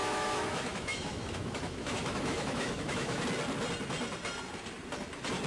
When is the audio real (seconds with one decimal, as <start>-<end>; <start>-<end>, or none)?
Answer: 3.2-5.5